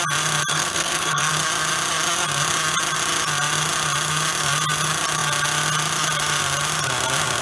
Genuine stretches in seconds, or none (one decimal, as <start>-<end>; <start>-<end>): 0.0-0.5; 1.3-7.4